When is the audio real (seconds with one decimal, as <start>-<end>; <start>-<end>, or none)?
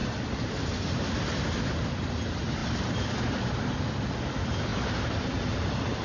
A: 0.0-2.6; 3.1-4.7; 5.6-6.0